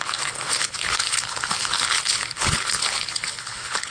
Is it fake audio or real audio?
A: fake